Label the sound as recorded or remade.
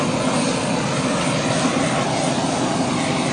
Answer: recorded